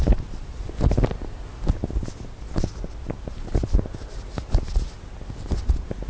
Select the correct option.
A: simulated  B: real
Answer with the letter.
B